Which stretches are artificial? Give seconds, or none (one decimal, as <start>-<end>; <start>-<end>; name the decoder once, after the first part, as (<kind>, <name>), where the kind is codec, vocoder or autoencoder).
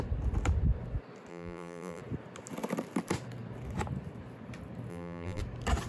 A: 1.3-2.0 (vocoder, BigVGAN v2); 4.9-5.4